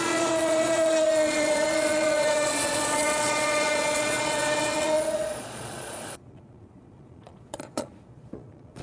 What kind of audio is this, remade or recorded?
remade